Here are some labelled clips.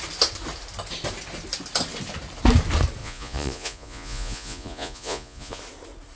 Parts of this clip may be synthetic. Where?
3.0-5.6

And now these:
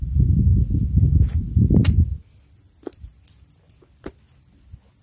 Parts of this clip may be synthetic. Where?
none

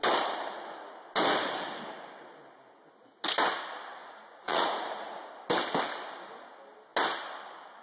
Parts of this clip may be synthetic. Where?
4.0-5.2